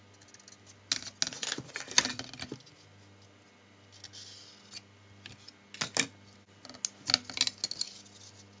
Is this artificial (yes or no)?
no